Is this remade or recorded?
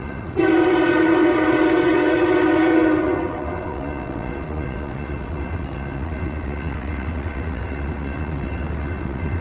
remade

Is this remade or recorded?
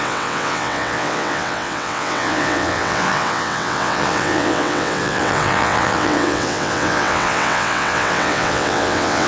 remade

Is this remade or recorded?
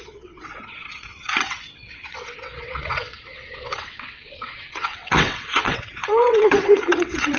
remade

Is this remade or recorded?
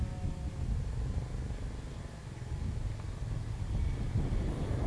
recorded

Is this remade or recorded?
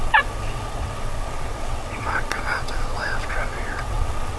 remade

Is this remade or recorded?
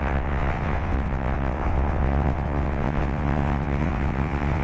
remade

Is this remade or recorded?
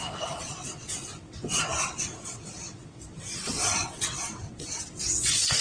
remade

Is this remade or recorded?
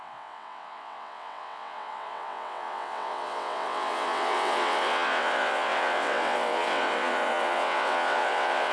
remade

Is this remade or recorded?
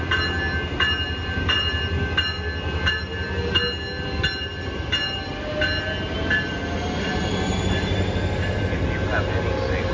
recorded